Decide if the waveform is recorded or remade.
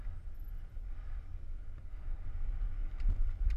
recorded